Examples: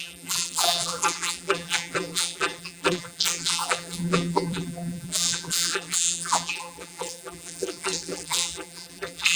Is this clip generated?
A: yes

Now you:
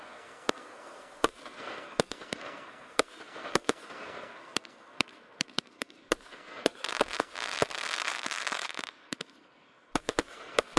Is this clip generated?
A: yes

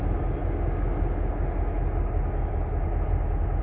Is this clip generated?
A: no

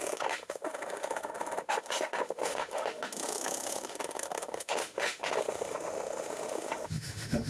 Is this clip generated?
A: yes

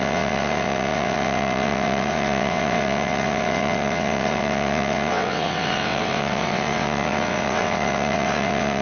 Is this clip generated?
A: yes